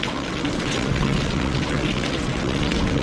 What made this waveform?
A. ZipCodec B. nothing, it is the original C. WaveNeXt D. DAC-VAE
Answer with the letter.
C